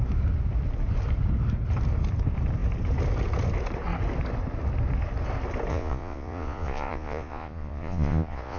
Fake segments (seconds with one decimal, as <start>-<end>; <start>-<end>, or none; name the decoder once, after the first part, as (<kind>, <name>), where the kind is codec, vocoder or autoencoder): 5.7-8.6 (vocoder, Vocos)